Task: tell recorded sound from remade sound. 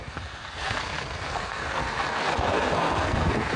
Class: remade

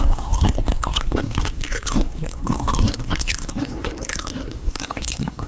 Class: remade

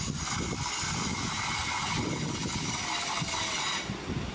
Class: recorded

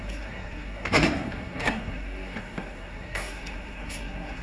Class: remade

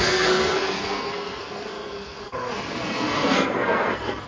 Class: remade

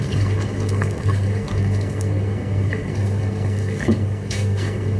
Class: remade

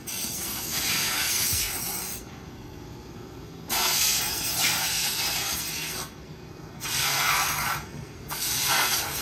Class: remade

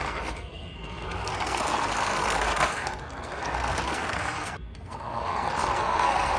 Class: remade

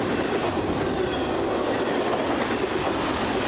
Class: recorded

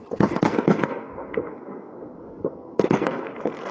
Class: remade